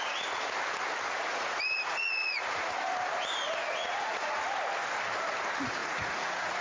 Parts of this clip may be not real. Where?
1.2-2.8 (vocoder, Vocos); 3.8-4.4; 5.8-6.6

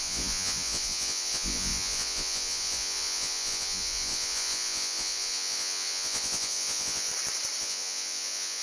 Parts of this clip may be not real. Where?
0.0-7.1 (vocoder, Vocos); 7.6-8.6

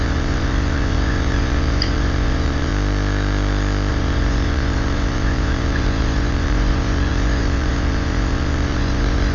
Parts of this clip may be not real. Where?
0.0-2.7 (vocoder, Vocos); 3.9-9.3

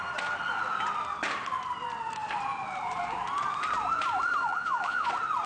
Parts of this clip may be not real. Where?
4.4-5.1 (vocoder, Vocos)

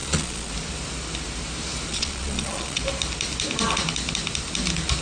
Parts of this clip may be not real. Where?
0.0-0.5 (vocoder, Vocos); 1.9-2.8

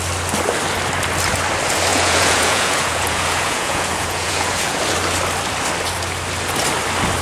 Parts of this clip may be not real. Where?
1.9-4.8 (vocoder, Vocos)

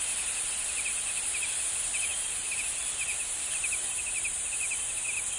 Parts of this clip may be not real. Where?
none